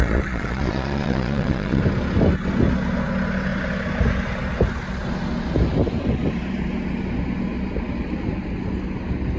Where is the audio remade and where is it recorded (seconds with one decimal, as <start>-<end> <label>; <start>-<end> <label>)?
0.0-1.8 remade; 1.8-9.4 recorded